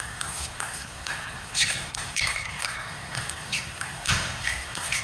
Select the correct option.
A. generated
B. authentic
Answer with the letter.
A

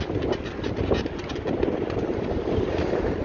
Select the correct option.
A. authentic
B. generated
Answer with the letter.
A